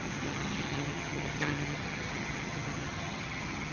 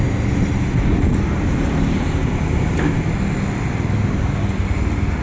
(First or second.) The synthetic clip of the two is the first